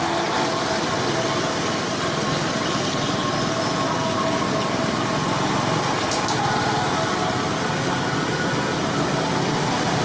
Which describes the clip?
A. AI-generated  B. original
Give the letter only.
B